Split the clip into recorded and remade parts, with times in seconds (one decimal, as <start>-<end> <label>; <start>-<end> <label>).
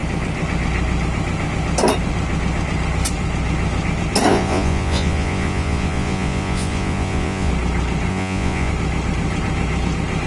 0.0-4.3 recorded; 4.3-7.5 remade; 7.5-8.1 recorded; 8.1-8.7 remade; 8.7-10.3 recorded